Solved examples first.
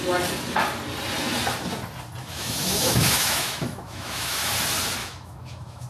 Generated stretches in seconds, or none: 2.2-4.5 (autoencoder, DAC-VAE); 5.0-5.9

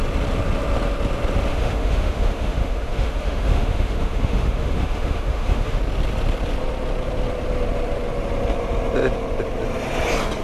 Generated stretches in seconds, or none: 1.5-5.8 (autoencoder, DAC-VAE)

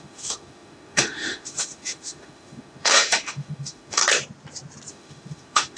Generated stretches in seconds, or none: 0.0-4.0 (autoencoder, DAC-VAE); 4.9-5.8

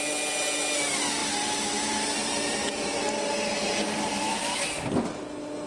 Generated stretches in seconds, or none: none